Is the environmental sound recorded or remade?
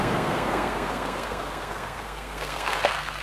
remade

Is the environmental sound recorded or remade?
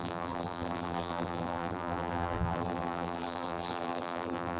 remade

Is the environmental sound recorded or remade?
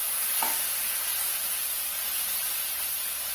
recorded